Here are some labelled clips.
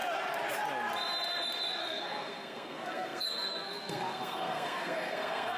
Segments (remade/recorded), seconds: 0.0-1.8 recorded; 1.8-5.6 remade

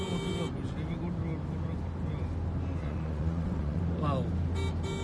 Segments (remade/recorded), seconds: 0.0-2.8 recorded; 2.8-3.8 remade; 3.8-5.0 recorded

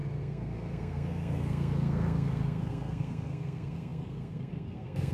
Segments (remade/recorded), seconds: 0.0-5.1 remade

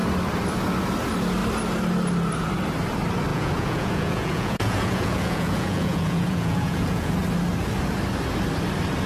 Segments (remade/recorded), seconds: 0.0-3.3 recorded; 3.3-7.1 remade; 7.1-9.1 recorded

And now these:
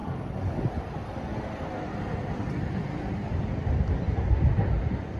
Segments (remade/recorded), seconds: 0.0-1.3 recorded; 1.3-3.8 remade; 3.8-5.2 recorded